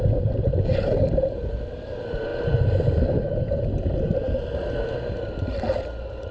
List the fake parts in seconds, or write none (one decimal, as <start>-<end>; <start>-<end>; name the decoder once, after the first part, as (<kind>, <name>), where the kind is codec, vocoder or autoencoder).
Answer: none